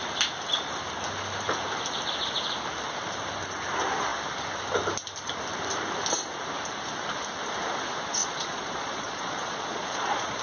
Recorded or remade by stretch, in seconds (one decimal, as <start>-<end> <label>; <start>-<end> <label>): 0.0-8.2 recorded; 8.2-10.4 remade